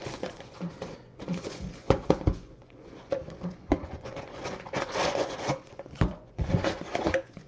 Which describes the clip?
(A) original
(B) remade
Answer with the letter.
B